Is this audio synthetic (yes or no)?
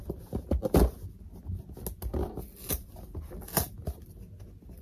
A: no